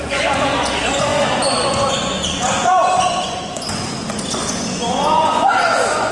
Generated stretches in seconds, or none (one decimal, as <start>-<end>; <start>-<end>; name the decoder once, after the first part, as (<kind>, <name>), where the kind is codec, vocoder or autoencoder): 0.0-6.1 (vocoder, Vocos)